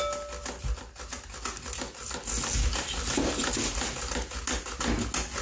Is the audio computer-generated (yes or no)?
no